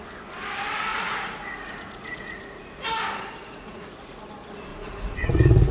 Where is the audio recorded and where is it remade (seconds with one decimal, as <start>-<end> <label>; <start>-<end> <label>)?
0.0-0.9 recorded; 0.9-2.9 remade; 2.9-3.4 recorded; 3.4-4.2 remade; 4.2-4.7 recorded; 4.7-5.7 remade